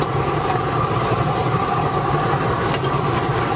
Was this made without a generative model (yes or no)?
no